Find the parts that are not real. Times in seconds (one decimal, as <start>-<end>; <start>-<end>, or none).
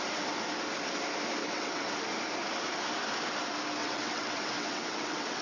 1.4-1.9; 3.8-5.4